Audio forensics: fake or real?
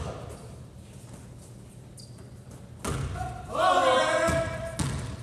real